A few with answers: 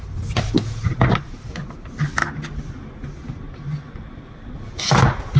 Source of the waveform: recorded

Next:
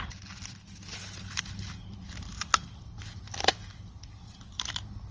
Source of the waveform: recorded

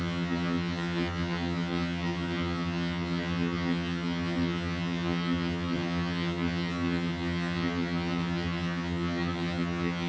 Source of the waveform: remade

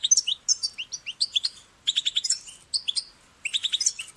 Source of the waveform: recorded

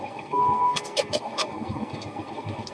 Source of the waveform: remade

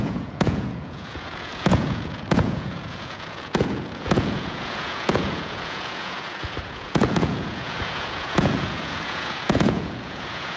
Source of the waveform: remade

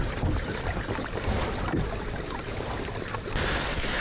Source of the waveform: recorded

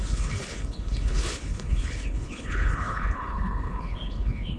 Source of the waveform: remade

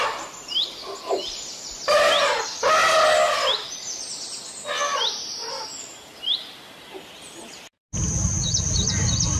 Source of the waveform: recorded